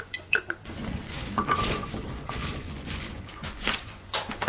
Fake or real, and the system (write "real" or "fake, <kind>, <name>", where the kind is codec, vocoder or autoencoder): fake, vocoder, Vocos